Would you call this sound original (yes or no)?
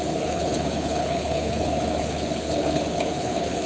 no